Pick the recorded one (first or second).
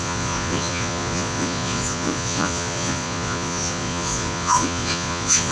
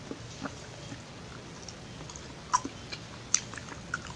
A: second